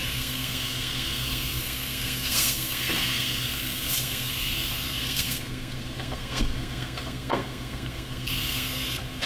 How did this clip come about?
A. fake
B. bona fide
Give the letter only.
A